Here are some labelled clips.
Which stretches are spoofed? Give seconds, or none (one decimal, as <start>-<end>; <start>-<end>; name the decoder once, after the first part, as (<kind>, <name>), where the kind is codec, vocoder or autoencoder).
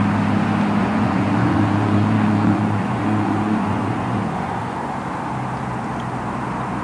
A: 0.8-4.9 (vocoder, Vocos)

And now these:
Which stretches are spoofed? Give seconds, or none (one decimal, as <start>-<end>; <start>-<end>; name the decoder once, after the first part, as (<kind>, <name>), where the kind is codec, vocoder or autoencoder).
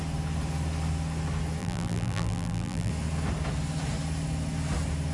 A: 1.6-2.9 (vocoder, BigVGAN v2)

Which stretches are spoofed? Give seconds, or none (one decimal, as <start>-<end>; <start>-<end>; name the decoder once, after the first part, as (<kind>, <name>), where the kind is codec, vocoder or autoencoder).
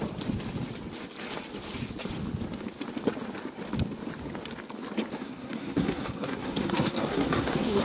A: 5.2-7.8 (codec, SNAC)